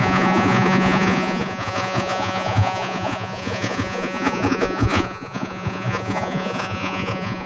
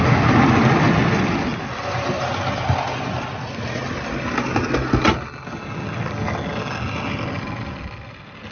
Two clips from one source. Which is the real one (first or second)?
second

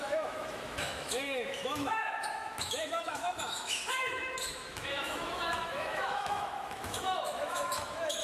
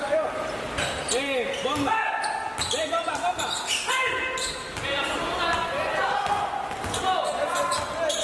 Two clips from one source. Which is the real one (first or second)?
second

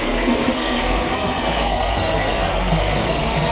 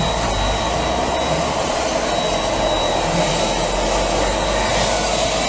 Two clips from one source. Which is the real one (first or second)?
second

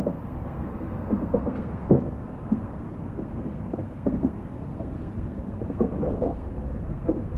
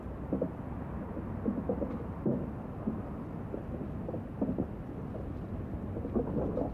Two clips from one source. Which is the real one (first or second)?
second